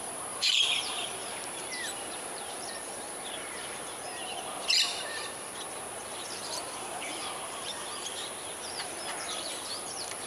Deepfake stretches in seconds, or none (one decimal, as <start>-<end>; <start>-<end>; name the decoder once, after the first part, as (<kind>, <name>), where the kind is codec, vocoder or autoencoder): 0.0-3.7 (vocoder, BigVGAN v2); 5.9-10.3